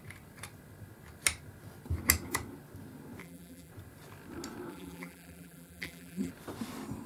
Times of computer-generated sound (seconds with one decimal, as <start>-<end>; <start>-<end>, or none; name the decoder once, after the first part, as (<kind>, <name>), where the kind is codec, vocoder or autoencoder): 3.2-3.7 (vocoder, BigVGAN v2); 4.7-6.3

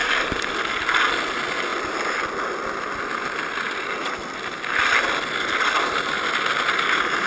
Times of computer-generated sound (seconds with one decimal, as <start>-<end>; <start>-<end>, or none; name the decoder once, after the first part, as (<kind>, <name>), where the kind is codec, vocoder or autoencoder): 0.0-0.5 (vocoder, BigVGAN v2)

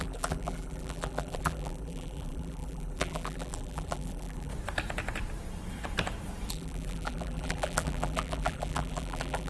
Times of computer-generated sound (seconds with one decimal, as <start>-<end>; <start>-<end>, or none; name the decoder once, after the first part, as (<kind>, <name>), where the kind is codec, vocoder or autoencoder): 0.0-4.5 (vocoder, BigVGAN v2); 6.5-9.5

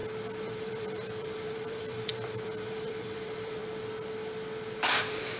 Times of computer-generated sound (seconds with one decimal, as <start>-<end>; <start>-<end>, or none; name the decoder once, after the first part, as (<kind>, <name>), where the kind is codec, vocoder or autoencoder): 0.5-3.6 (vocoder, BigVGAN v2); 5.0-5.4

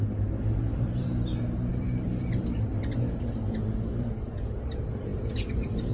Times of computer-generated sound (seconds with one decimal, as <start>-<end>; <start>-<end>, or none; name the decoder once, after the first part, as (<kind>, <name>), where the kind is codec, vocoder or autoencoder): 0.0-3.4 (vocoder, BigVGAN v2); 4.4-5.9

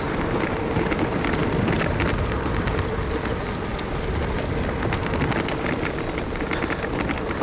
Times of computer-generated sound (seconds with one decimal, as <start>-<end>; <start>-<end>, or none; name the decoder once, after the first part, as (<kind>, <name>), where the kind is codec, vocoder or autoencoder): 1.4-1.9 (vocoder, BigVGAN v2); 3.7-4.2